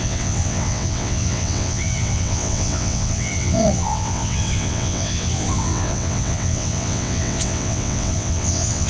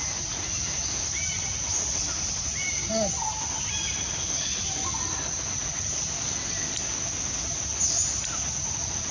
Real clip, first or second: second